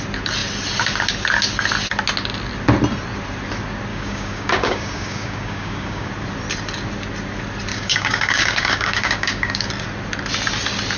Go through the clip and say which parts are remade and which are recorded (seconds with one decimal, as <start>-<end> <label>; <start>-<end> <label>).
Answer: 0.0-3.9 recorded; 3.9-6.1 remade; 6.1-7.7 recorded; 7.7-9.7 remade; 9.7-11.0 recorded